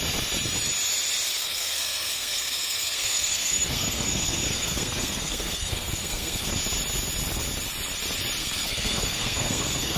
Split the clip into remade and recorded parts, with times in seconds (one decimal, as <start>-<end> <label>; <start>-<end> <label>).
0.0-1.3 recorded; 1.3-6.5 remade; 6.5-8.4 recorded; 8.4-10.0 remade